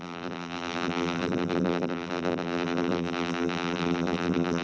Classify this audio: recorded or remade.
remade